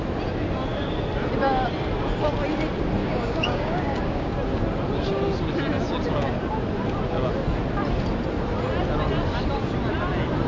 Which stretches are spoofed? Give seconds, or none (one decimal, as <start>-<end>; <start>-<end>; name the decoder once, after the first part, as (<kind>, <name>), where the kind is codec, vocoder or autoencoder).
3.0-4.3 (codec, DAC)